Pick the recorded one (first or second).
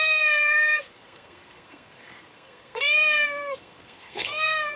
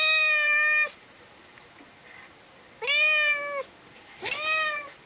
second